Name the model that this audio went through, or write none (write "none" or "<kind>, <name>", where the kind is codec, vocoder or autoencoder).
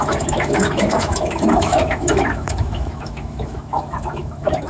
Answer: autoencoder, DAC-VAE